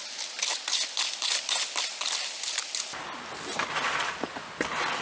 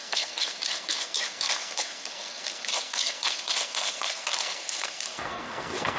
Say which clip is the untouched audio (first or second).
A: first